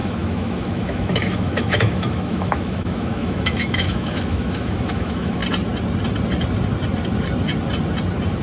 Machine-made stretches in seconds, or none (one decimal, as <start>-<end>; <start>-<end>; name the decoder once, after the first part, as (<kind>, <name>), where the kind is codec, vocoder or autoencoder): 0.0-5.4 (autoencoder, DAC-VAE)